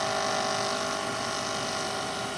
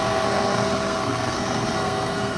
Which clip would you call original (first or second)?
first